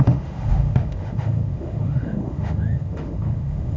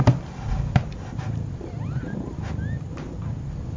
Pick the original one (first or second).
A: second